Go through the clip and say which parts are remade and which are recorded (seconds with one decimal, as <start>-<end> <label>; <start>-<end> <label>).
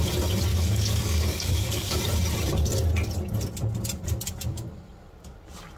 0.0-0.5 recorded; 0.5-2.0 remade; 2.0-5.8 recorded